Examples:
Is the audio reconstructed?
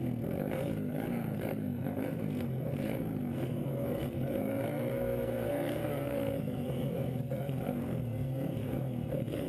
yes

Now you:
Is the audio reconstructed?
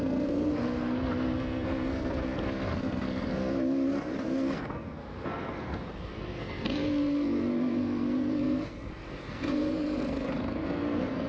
yes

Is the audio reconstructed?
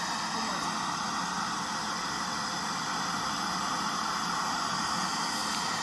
no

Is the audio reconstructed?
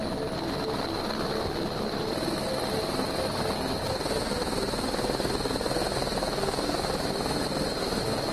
no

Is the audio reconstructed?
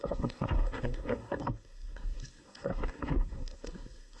yes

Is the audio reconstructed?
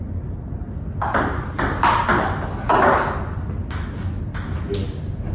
no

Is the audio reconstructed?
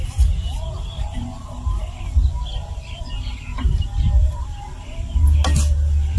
no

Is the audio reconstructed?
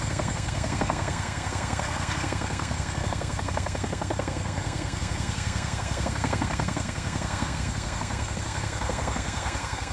yes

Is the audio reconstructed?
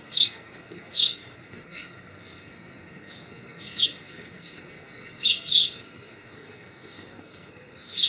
yes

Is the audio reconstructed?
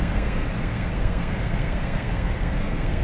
yes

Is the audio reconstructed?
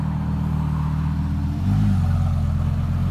no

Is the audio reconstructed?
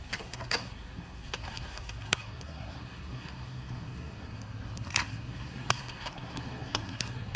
yes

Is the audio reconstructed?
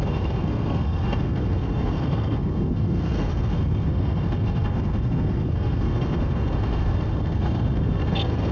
yes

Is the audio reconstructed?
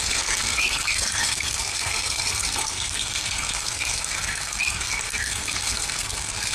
yes